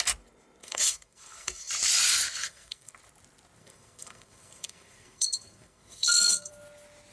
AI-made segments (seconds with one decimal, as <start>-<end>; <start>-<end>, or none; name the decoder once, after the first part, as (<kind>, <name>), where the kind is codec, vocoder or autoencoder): 0.6-1.7 (codec, SNAC); 2.3-2.9; 3.6-6.5